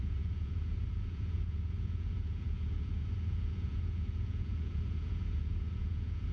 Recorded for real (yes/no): no